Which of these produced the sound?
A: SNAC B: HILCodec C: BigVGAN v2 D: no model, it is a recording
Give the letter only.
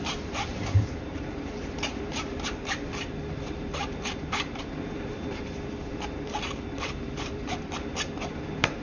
C